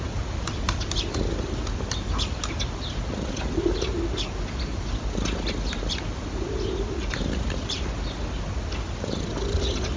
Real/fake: real